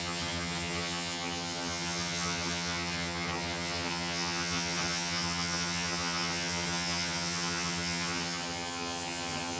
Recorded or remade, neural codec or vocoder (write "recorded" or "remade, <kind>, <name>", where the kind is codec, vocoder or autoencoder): remade, vocoder, HiFi-GAN